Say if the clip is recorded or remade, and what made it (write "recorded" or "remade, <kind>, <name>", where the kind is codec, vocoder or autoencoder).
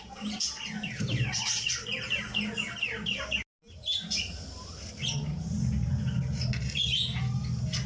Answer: recorded